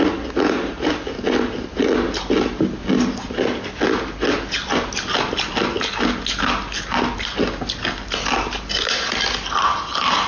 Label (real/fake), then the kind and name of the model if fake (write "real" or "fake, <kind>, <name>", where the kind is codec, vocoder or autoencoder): real